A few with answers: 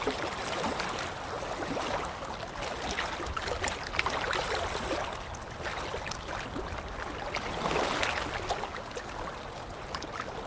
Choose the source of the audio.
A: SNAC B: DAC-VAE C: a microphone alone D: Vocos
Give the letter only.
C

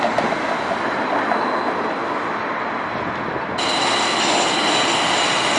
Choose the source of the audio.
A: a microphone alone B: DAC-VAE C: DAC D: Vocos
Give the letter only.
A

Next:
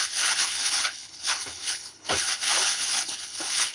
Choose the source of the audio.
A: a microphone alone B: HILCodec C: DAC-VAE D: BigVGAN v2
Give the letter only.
B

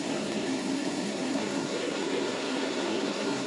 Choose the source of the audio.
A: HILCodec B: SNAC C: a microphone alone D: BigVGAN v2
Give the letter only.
B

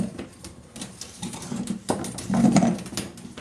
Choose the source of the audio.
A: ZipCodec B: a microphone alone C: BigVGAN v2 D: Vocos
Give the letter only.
C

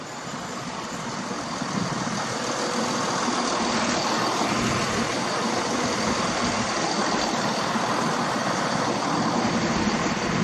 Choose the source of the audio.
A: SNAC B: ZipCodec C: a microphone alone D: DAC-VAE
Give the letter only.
C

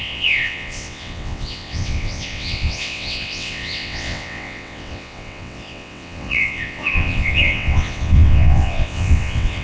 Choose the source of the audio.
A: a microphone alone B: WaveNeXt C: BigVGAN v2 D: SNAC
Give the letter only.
B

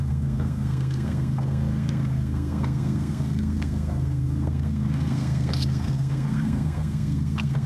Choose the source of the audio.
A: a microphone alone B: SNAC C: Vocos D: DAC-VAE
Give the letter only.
B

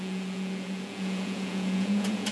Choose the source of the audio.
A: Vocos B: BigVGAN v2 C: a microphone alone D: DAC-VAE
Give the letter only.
A